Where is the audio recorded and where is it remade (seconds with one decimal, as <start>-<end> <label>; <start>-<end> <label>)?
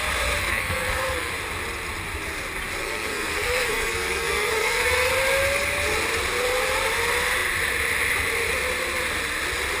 0.0-0.4 recorded; 0.4-1.3 remade; 1.3-2.8 recorded; 2.8-5.1 remade; 5.1-9.8 recorded